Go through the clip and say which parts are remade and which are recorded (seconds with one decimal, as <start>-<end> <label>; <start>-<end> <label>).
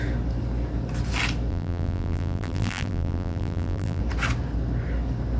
0.0-1.5 recorded; 1.5-4.0 remade; 4.0-5.4 recorded